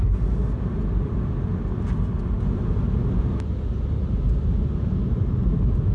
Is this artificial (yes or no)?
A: no